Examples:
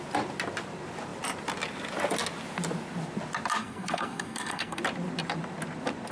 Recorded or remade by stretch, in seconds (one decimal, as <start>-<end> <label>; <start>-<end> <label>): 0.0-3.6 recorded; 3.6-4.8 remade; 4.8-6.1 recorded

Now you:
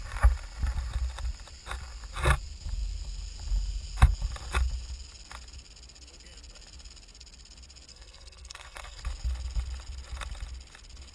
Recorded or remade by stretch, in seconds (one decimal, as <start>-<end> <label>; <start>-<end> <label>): 0.0-7.9 recorded; 7.9-9.0 remade; 9.0-11.1 recorded

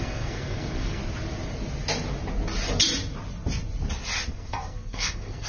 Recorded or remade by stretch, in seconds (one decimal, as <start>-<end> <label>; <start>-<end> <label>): 0.0-1.0 remade; 1.0-4.3 recorded; 4.3-5.5 remade